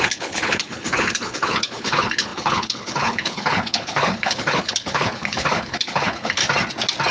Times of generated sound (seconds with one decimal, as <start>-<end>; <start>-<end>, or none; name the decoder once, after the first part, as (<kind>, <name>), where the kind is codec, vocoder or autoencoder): 0.0-6.4 (codec, HILCodec)

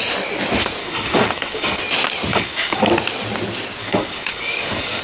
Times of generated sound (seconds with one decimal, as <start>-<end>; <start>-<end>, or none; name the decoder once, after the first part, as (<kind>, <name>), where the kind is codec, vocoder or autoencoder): 0.8-1.8 (codec, DAC); 2.3-2.9; 3.8-5.0

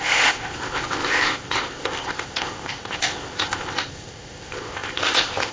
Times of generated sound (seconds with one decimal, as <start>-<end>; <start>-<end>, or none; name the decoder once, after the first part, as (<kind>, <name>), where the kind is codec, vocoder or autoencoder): 0.0-5.5 (codec, ZipCodec)

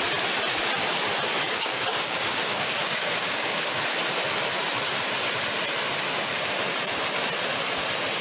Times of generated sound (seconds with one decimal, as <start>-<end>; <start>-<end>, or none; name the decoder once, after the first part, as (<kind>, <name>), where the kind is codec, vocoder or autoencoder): 1.3-3.8 (codec, DAC)

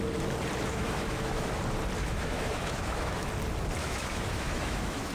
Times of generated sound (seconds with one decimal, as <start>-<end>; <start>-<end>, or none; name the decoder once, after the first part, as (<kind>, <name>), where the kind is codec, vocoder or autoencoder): 0.7-1.6 (autoencoder, DAC-VAE); 2.0-3.3; 3.8-5.1

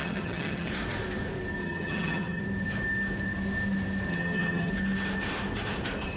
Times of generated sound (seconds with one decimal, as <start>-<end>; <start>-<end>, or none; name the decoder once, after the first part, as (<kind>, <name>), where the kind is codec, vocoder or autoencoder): 0.0-0.7 (vocoder, HiFi-GAN); 1.6-2.4; 4.1-4.7

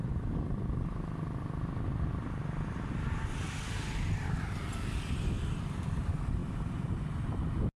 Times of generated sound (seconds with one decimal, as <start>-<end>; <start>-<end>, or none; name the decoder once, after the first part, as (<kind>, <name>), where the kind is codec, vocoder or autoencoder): none